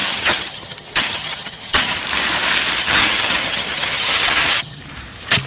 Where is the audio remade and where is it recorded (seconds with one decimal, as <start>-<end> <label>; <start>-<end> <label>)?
0.0-2.0 remade; 2.0-2.8 recorded; 2.8-4.8 remade; 4.8-5.5 recorded